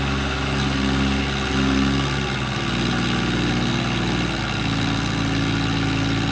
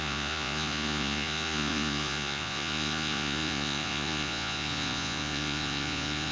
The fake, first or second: second